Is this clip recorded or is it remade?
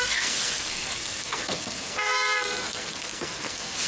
remade